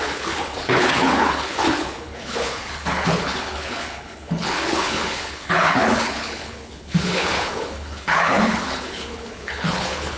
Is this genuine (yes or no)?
no